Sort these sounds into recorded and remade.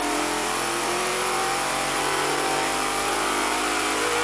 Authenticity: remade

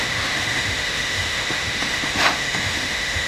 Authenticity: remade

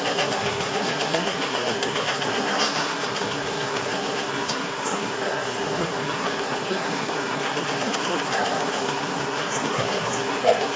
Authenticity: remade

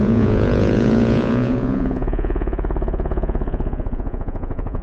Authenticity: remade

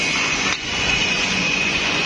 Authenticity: remade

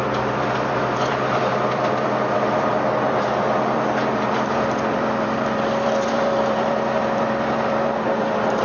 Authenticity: remade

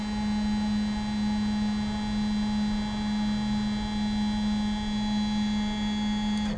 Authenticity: recorded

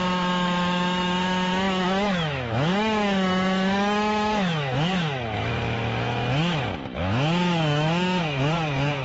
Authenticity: remade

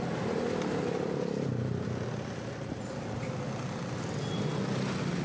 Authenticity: recorded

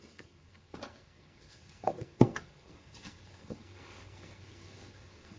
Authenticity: remade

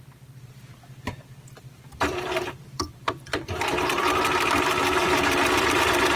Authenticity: remade